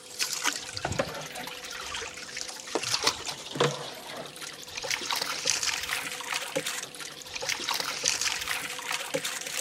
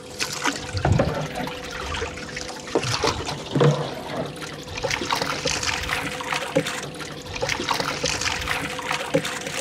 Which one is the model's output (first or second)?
first